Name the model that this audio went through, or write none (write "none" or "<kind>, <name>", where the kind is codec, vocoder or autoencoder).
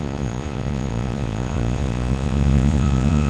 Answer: vocoder, Vocos